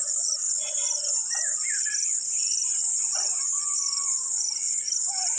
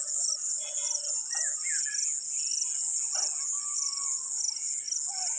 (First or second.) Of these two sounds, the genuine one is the second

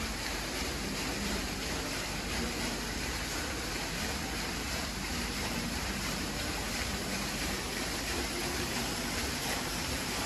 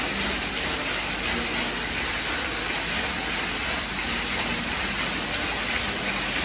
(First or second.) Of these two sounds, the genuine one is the second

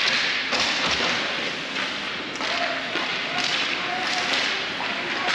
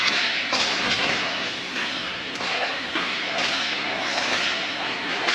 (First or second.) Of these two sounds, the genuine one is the first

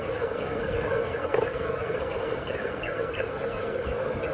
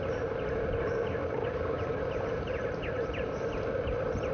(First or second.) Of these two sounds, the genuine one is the second